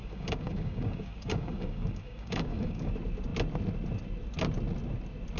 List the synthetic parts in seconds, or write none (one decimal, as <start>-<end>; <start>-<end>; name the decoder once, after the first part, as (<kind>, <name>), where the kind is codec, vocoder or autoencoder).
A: 0.0-2.9 (codec, DAC)

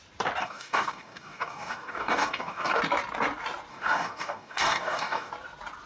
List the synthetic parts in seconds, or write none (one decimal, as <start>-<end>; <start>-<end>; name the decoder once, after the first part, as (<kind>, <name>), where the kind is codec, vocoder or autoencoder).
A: 0.4-2.8 (codec, DAC); 3.7-5.3

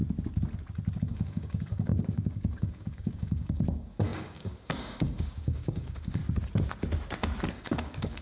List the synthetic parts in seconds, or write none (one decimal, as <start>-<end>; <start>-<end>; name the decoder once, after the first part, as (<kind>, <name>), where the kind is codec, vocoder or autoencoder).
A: 1.0-6.2 (codec, DAC); 7.5-8.2

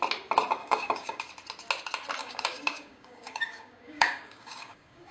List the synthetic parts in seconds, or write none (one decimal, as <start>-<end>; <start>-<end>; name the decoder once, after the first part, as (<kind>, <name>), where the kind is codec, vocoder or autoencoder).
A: 0.6-1.3 (codec, DAC); 2.2-5.1